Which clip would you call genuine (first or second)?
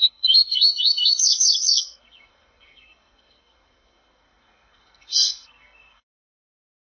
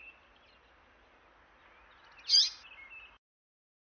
second